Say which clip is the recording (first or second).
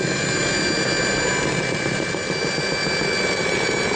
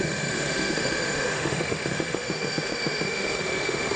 first